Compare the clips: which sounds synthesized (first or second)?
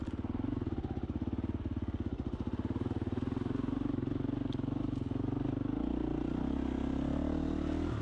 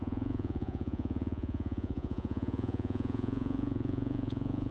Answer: second